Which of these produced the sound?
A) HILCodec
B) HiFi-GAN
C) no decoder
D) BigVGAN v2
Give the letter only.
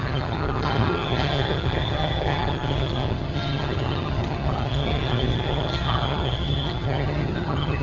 B